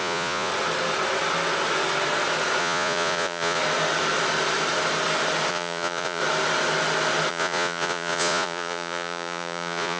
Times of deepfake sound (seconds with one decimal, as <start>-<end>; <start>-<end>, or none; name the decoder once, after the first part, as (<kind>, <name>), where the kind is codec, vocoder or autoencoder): 0.0-0.5 (vocoder, Vocos); 2.6-3.6; 5.5-6.2; 7.3-10.0